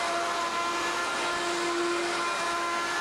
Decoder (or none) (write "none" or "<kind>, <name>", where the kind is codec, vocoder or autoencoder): none